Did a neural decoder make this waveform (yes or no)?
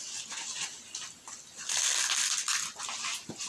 no